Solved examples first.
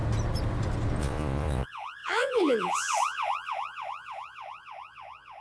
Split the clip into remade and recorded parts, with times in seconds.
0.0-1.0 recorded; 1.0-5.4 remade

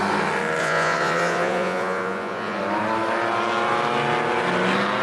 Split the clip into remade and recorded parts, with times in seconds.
0.0-0.6 recorded; 0.6-2.6 remade; 2.6-5.0 recorded

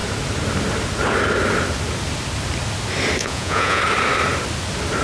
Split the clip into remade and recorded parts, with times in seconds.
0.0-3.2 recorded; 3.2-3.8 remade; 3.8-5.0 recorded

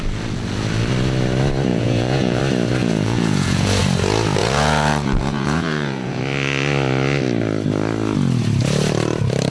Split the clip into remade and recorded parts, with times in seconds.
0.0-1.7 recorded; 1.7-2.4 remade; 2.4-2.8 recorded; 2.8-3.8 remade; 3.8-4.4 recorded; 4.4-6.2 remade; 6.2-9.5 recorded

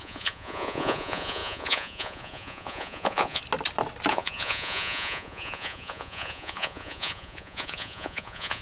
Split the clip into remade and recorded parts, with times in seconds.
0.0-3.4 remade; 3.4-4.1 recorded; 4.1-8.6 remade

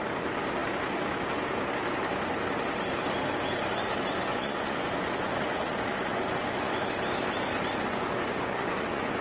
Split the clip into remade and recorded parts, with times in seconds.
0.0-4.3 recorded; 4.3-6.9 remade; 6.9-7.7 recorded; 7.7-9.2 remade

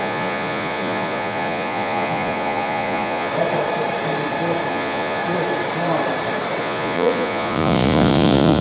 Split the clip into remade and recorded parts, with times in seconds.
0.0-3.3 remade; 3.3-4.7 recorded; 4.7-5.2 remade; 5.2-6.6 recorded; 6.6-8.6 remade